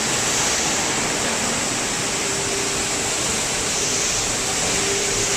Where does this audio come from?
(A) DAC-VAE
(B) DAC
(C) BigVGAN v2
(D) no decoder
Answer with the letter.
D